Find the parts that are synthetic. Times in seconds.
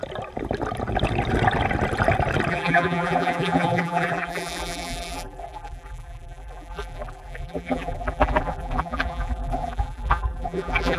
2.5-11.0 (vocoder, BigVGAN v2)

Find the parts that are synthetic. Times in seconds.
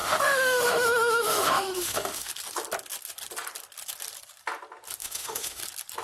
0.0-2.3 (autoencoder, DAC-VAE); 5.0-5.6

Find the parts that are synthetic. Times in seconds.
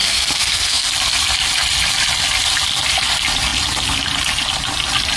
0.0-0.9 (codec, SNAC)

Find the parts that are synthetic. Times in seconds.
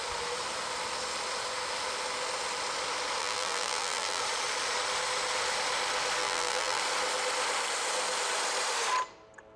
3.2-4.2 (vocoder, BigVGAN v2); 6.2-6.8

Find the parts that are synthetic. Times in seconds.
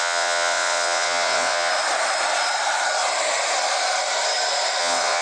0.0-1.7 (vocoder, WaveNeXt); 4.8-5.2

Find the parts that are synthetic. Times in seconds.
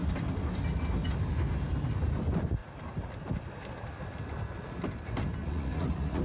5.4-6.2 (vocoder, Vocos)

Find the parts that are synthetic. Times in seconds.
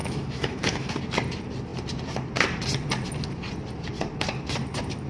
0.0-0.9 (autoencoder, DAC-VAE)